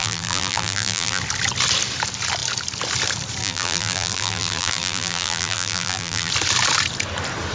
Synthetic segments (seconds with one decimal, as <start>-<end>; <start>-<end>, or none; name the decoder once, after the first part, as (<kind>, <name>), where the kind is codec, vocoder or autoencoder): 0.0-1.2 (vocoder, BigVGAN v2); 3.4-6.3